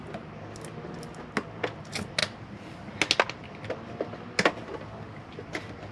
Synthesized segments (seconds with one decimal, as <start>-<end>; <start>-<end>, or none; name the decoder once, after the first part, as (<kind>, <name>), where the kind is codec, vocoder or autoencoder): none